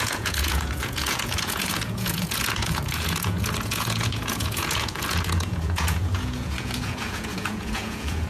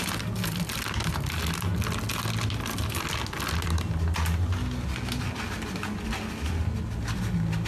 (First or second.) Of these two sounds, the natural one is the second